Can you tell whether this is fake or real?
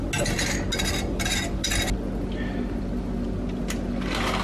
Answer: real